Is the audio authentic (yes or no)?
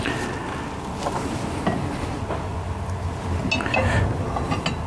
yes